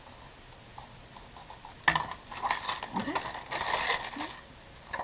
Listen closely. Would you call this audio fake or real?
real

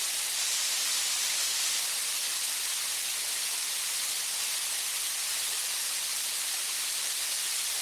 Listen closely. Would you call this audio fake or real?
real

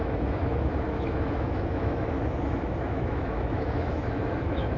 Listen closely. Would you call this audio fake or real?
fake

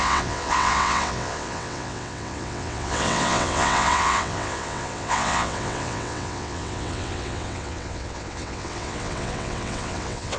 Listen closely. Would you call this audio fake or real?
fake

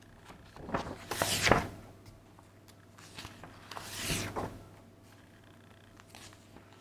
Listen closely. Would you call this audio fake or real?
real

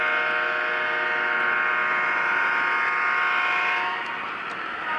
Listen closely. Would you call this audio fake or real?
real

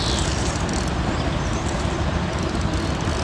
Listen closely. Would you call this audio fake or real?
real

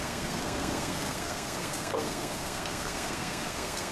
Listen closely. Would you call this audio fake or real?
fake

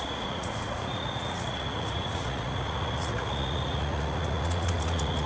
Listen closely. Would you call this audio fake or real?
fake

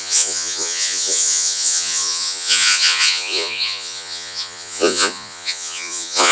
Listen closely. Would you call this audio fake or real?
fake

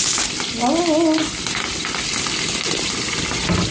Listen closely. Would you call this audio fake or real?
real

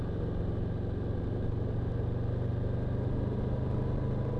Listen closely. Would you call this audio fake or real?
real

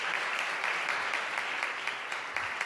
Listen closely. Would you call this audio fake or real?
real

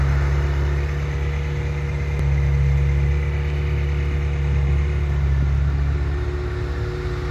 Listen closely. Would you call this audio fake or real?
real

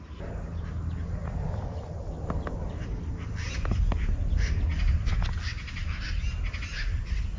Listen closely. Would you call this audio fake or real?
real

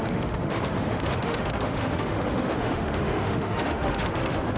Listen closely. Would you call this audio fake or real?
fake